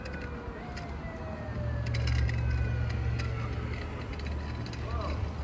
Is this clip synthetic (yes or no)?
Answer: no